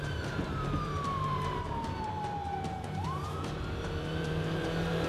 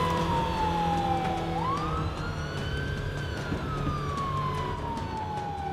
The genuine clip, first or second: second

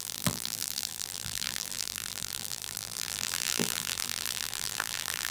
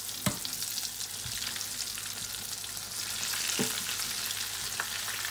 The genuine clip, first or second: second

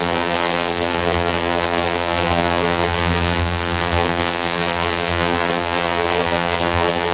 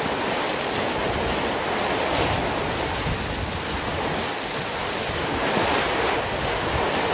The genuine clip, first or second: second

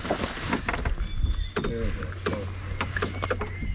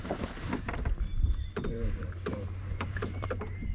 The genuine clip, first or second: first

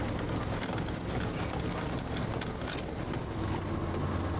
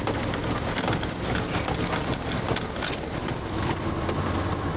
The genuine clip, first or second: first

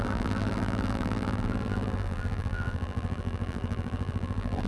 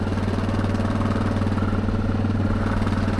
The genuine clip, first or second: second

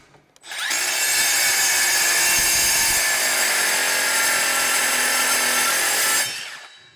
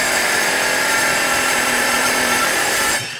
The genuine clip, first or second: first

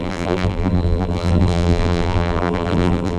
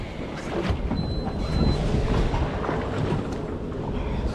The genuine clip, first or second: second